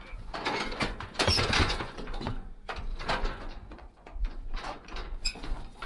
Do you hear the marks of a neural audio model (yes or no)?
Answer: yes